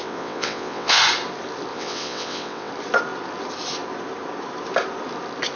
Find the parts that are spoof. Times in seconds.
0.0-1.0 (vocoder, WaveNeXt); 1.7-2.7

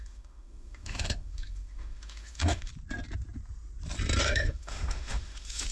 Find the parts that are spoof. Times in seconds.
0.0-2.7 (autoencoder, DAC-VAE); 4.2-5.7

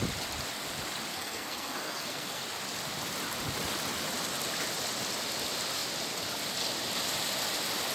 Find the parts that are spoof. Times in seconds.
1.1-2.4 (codec, SNAC)

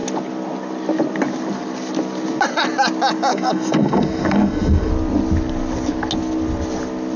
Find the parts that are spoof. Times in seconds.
3.3-4.9 (codec, SNAC)

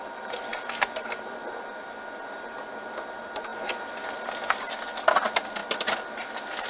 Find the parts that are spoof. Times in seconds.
none